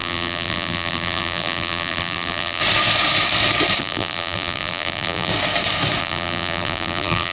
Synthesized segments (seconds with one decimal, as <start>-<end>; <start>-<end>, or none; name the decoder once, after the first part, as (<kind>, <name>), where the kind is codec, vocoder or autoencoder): 0.0-2.6 (vocoder, BigVGAN v2); 3.8-5.3; 6.0-7.3